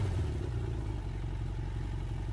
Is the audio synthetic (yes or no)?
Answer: no